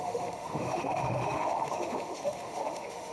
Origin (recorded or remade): remade